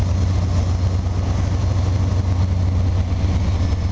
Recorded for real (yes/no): yes